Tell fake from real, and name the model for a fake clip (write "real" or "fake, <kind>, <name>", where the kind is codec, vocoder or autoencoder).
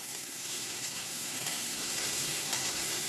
fake, codec, SNAC